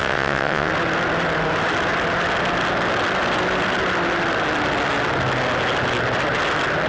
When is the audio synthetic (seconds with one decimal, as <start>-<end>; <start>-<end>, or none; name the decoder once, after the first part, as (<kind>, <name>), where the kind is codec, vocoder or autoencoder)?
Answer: 0.0-0.7 (vocoder, WaveNeXt)